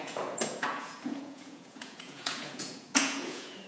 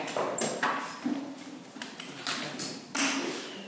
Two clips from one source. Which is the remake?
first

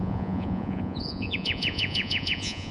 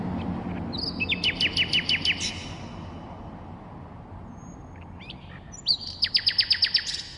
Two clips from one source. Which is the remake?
first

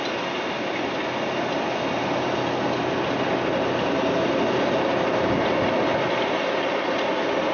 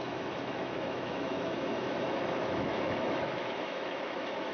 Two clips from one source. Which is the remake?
second